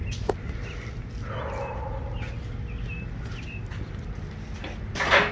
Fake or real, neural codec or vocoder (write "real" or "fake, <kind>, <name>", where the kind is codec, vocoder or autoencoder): real